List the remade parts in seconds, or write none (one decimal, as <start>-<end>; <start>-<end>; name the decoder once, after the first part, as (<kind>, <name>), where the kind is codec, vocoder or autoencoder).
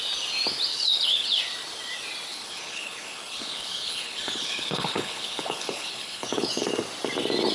0.7-1.4 (codec, HILCodec); 2.3-6.7